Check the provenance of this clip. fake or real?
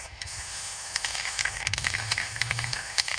fake